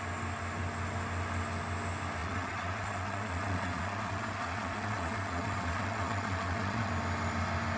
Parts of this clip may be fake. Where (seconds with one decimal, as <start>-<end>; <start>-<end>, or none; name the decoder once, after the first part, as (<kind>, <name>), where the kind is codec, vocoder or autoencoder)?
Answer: 2.2-6.9 (vocoder, Vocos)

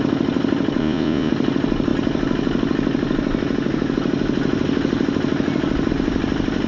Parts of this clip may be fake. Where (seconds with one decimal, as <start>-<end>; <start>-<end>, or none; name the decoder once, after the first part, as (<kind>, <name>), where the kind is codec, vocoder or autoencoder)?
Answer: 0.8-1.3 (vocoder, Vocos)

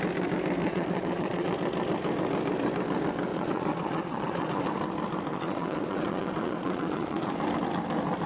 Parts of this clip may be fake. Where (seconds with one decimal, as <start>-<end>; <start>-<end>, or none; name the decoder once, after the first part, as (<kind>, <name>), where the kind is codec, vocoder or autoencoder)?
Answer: 0.6-1.5 (vocoder, Vocos); 3.3-4.6; 5.3-7.3

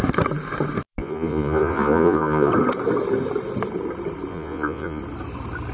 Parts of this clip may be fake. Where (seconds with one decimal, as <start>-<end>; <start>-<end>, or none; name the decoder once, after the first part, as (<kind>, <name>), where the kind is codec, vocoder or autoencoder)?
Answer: 1.0-2.5 (vocoder, Vocos); 4.3-5.0

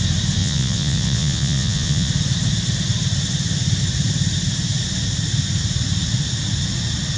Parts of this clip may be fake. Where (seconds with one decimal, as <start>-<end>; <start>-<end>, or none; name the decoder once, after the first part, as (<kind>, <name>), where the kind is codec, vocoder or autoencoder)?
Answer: 0.4-2.1 (vocoder, Vocos)

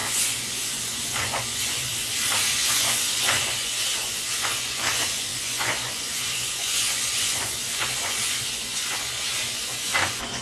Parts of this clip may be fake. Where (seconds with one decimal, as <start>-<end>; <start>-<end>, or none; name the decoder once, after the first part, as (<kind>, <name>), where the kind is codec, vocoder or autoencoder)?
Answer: 0.0-1.9 (vocoder, Vocos); 2.5-10.4

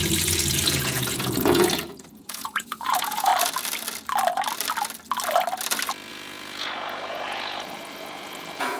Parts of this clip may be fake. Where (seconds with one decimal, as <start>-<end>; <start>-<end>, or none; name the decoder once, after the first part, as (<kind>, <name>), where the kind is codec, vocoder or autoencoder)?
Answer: 0.0-3.3 (vocoder, Vocos); 6.1-8.8

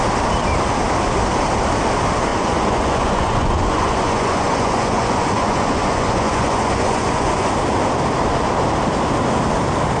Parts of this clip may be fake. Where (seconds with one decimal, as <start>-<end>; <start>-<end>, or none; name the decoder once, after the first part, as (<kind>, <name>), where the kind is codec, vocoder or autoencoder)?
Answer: 2.3-7.5 (vocoder, Vocos)